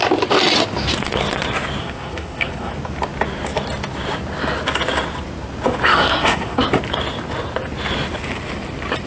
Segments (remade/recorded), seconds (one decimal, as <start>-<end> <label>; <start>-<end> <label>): 0.0-1.8 recorded; 1.8-2.7 remade; 2.7-5.9 recorded; 5.9-6.6 remade; 6.6-9.1 recorded

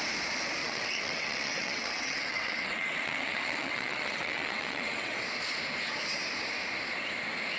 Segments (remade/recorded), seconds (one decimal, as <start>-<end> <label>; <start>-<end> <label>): 0.0-0.6 recorded; 0.6-5.2 remade; 5.2-7.6 recorded

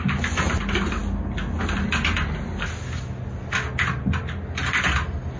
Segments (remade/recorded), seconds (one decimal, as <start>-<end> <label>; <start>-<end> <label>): 0.0-5.4 recorded